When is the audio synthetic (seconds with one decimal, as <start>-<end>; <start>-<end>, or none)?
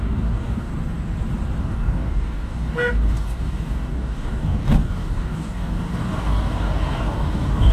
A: 0.0-0.7; 1.6-7.7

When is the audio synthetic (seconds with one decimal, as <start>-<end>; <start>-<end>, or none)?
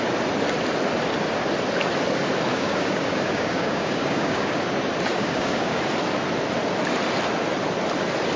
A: 2.5-4.6; 5.1-5.8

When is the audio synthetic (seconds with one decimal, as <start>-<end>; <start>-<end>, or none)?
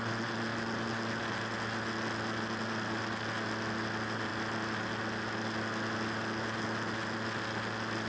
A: none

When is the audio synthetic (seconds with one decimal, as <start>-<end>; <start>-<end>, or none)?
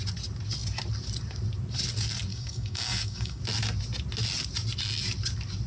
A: 2.3-3.4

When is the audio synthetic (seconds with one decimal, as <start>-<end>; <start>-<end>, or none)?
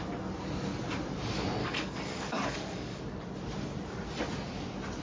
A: 1.6-3.0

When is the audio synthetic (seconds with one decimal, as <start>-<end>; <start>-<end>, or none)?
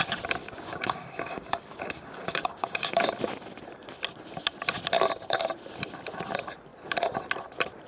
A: 0.4-3.1